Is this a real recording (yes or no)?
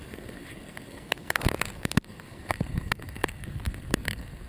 no